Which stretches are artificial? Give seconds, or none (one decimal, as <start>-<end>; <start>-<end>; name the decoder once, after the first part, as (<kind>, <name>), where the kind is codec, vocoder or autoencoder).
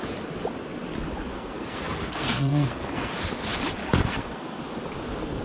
1.3-3.1 (codec, SNAC); 3.8-4.6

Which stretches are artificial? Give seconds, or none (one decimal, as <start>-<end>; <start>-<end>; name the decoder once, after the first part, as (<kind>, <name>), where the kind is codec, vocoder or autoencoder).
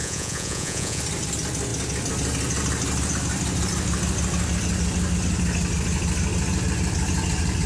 0.0-1.0 (vocoder, Vocos)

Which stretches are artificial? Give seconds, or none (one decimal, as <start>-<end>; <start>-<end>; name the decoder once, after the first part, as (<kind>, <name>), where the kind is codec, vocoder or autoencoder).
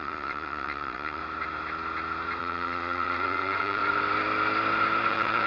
0.0-1.2 (vocoder, WaveNeXt); 2.4-3.8; 5.1-5.5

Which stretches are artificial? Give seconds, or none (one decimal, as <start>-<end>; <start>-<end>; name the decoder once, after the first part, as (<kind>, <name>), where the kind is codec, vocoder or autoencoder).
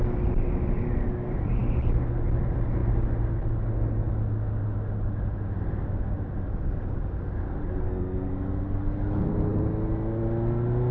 7.8-8.3 (codec, SNAC)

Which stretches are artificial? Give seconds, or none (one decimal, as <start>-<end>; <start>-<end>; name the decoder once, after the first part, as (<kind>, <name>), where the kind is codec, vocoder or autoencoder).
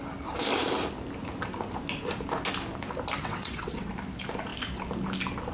3.2-3.9 (vocoder, WaveNeXt)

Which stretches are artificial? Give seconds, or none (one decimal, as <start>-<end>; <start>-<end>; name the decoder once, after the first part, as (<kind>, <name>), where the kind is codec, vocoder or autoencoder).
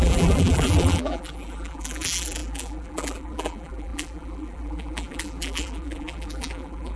0.0-7.0 (vocoder, BigVGAN v2)